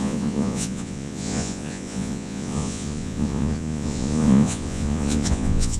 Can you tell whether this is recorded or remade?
remade